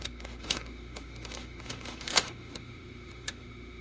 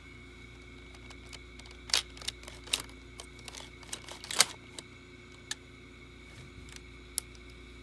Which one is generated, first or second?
first